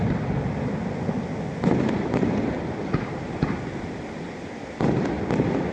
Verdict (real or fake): real